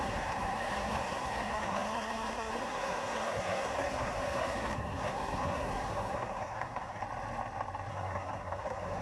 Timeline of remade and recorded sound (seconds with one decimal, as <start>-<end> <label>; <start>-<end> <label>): 0.0-7.0 remade; 7.0-7.9 recorded; 7.9-9.0 remade